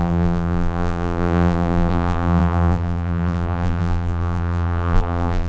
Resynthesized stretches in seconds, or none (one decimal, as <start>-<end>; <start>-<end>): 0.0-5.5